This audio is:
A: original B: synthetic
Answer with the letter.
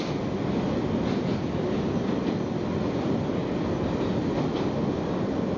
A